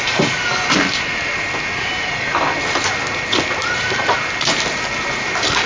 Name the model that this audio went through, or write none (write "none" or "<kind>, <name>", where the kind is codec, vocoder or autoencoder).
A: vocoder, BigVGAN v2